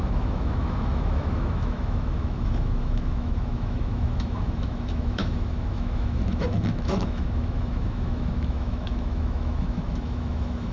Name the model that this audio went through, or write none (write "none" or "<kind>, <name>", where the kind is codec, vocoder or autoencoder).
autoencoder, DAC-VAE